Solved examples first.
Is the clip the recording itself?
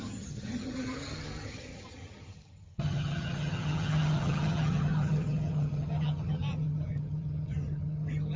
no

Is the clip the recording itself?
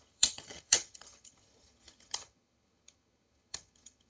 no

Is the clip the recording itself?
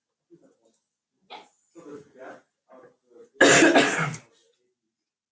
yes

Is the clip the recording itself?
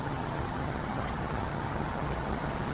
no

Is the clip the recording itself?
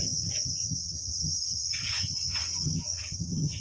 no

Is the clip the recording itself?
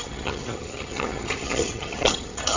no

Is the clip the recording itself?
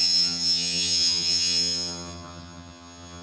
no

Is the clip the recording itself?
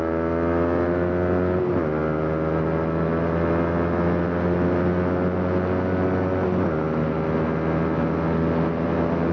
yes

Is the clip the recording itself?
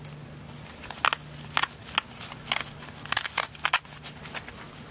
yes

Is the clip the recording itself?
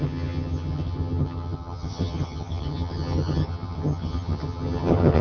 no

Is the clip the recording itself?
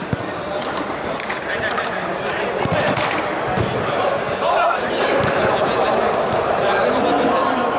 yes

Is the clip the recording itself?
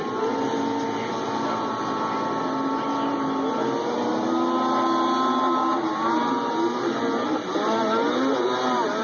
yes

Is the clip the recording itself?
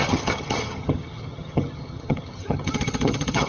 no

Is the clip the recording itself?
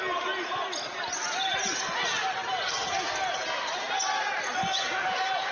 yes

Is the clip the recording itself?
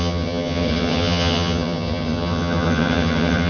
no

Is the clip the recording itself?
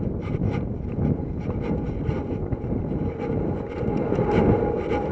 yes